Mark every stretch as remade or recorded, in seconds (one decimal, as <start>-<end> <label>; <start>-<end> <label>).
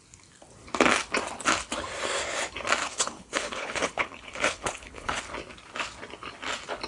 0.0-2.8 recorded; 2.8-5.2 remade; 5.2-6.9 recorded